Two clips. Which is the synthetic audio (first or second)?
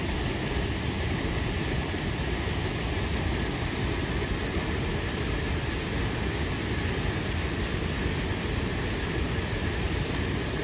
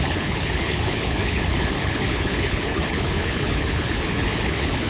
second